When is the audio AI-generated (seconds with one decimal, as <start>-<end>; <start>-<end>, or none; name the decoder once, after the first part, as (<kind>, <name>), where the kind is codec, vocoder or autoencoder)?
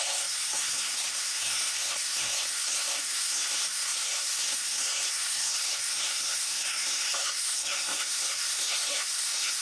0.0-9.6 (codec, SNAC)